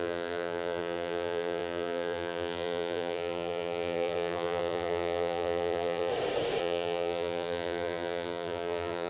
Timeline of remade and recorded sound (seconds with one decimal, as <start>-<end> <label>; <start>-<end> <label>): 0.0-6.1 remade; 6.1-6.6 recorded; 6.6-9.1 remade